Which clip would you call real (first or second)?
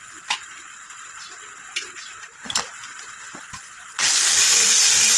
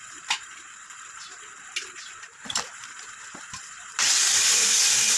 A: first